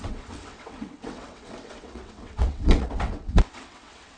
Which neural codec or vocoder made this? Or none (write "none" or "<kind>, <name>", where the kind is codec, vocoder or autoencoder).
vocoder, WaveNeXt